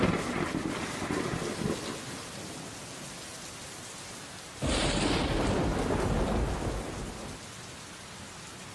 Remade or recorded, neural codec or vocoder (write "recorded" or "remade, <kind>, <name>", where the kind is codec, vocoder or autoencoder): recorded